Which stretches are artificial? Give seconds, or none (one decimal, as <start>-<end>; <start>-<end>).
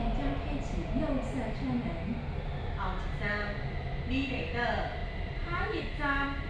5.0-5.8